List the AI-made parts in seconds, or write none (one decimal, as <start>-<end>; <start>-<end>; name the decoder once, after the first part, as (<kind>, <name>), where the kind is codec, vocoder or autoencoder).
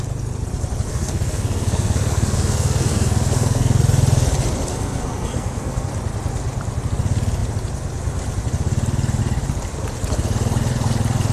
0.9-3.8 (codec, SNAC); 4.7-5.9